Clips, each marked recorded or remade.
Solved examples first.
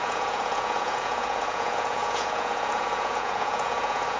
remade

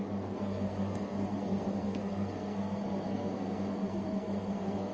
remade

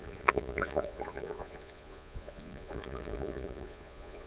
remade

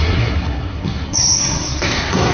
remade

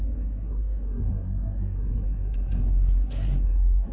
remade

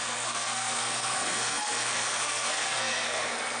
remade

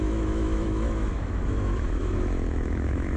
remade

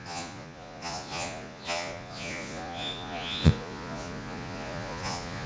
remade